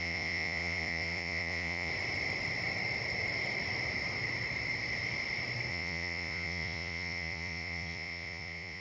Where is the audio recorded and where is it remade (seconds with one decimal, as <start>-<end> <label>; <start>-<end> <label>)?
0.0-1.9 remade; 1.9-5.7 recorded; 5.7-8.8 remade